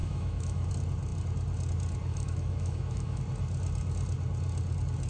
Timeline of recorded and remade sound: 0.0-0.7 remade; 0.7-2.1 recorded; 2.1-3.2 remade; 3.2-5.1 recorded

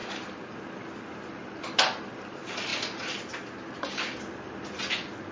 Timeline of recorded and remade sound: 0.0-5.3 recorded

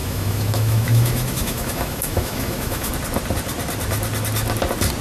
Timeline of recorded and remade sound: 0.0-2.9 remade; 2.9-5.0 recorded

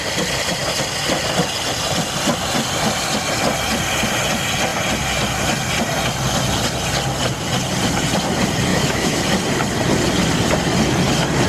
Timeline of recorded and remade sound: 0.0-8.7 recorded; 8.7-9.2 remade; 9.2-11.5 recorded

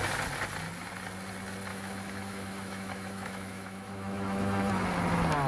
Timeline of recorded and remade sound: 0.0-1.7 recorded; 1.7-4.7 remade; 4.7-5.5 recorded

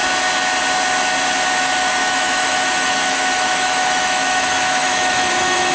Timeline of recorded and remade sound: 0.0-2.0 recorded; 2.0-5.7 remade

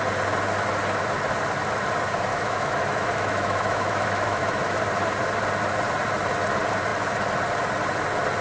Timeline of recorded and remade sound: 0.0-2.3 recorded; 2.3-4.6 remade; 4.6-8.4 recorded